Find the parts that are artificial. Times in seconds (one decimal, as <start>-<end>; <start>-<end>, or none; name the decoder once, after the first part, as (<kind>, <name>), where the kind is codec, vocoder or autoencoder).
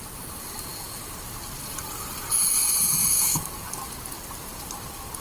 2.6-3.4 (vocoder, Vocos)